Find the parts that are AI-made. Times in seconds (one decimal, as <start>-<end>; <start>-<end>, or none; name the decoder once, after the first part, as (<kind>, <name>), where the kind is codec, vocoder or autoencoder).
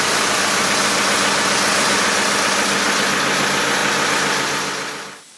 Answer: none